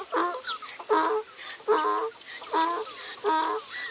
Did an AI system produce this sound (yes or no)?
no